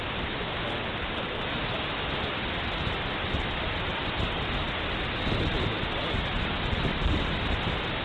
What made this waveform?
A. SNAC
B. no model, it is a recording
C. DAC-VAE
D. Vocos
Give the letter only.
B